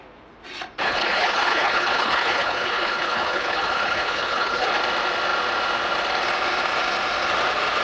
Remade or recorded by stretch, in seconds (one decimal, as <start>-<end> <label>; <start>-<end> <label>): 0.0-0.8 recorded; 0.8-4.7 remade; 4.7-7.8 recorded